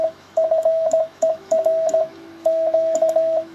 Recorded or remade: remade